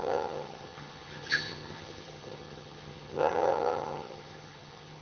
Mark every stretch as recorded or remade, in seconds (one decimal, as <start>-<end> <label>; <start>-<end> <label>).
0.0-5.0 remade